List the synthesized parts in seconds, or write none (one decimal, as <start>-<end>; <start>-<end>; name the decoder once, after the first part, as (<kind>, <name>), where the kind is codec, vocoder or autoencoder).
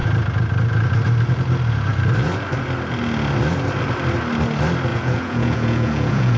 4.9-6.4 (vocoder, Vocos)